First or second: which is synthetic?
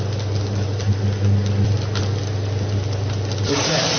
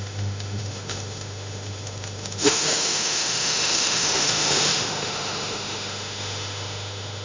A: second